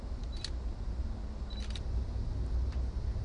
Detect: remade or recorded recorded